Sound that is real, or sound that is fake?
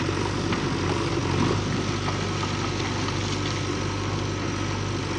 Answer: real